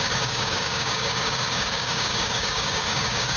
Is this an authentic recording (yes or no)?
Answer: no